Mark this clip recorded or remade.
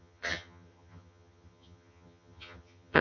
remade